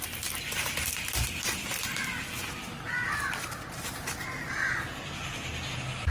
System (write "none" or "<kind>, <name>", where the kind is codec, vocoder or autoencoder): none